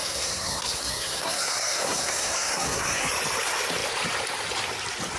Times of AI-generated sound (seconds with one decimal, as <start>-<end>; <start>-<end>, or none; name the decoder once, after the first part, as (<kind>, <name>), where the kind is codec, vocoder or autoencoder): 0.0-3.1 (codec, SNAC)